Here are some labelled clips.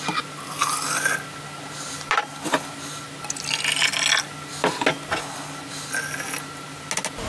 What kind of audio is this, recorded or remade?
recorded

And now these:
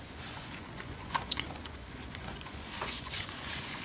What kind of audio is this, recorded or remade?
remade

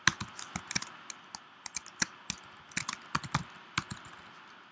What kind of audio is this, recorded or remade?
recorded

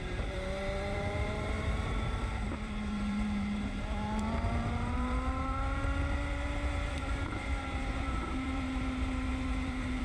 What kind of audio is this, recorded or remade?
remade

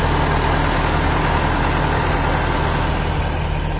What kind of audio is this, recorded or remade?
recorded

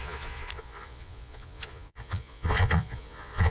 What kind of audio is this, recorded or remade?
remade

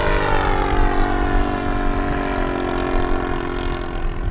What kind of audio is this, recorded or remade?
recorded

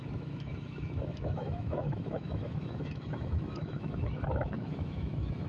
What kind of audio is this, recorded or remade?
remade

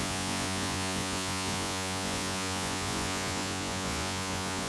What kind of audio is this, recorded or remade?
remade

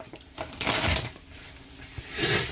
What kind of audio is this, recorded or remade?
recorded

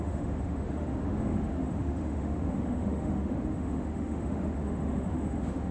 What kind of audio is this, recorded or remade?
remade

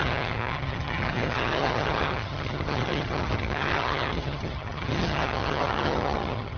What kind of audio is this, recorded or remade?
remade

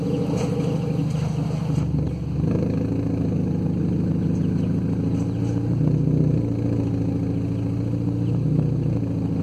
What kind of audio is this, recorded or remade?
recorded